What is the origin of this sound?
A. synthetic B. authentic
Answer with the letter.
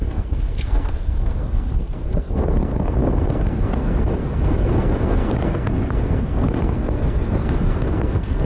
A